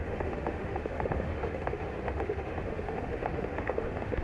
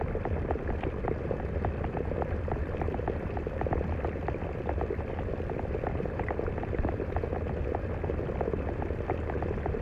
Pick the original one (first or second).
second